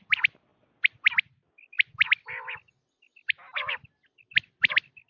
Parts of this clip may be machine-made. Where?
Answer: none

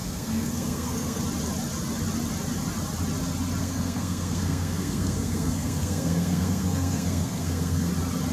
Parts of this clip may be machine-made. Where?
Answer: 0.0-1.2 (codec, SNAC); 3.6-7.9

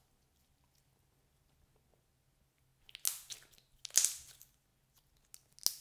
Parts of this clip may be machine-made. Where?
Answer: none

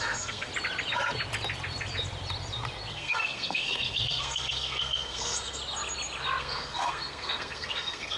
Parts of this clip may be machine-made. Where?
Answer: 0.0-0.5 (codec, SNAC); 2.9-5.6; 6.4-8.2

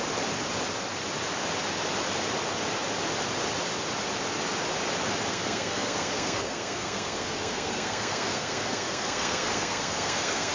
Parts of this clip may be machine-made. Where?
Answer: 5.3-10.5 (codec, SNAC)

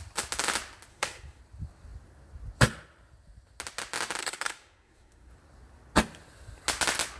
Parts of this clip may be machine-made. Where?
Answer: 0.9-1.4 (codec, SNAC); 4.2-5.3

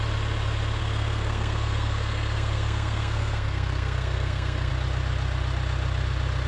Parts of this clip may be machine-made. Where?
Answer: 0.8-4.7 (codec, SNAC)